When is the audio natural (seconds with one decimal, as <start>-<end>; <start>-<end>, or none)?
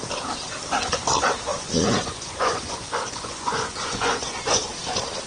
0.0-1.5; 4.7-5.3